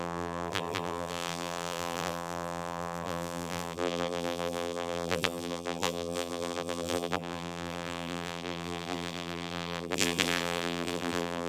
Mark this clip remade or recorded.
remade